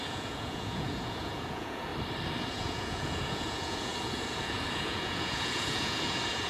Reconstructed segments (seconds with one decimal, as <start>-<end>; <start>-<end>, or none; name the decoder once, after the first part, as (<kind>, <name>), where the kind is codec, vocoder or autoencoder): 0.0-1.9 (vocoder, Vocos); 2.5-6.5